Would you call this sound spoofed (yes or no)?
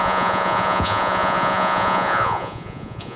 yes